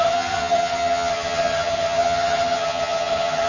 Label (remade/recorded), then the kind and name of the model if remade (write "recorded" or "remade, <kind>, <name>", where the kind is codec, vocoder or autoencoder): remade, vocoder, HiFi-GAN